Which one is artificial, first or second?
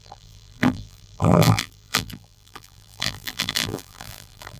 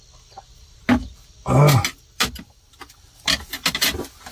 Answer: first